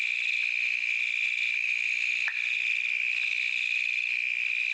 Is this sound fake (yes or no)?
no